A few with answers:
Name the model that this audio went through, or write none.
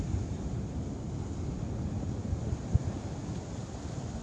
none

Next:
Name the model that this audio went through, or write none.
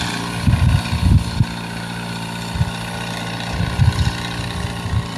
none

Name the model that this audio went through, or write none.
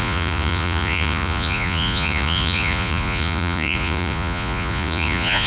vocoder, Vocos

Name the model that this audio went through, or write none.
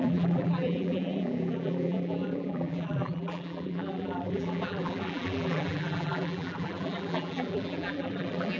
vocoder, BigVGAN v2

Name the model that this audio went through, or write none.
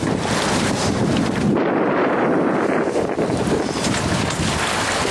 none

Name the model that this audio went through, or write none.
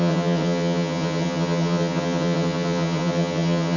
vocoder, HiFi-GAN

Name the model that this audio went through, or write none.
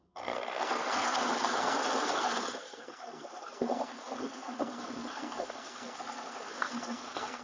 codec, SNAC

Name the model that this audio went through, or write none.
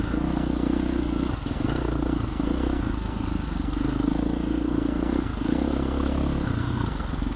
codec, SNAC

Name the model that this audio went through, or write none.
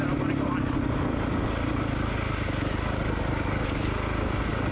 none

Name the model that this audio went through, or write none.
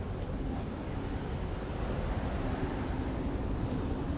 none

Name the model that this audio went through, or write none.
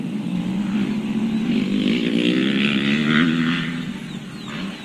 none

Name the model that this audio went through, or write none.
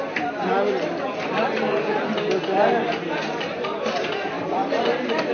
none